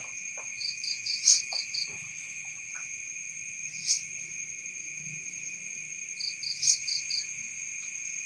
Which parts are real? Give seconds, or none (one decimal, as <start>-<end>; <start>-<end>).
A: 0.0-0.5; 2.7-8.3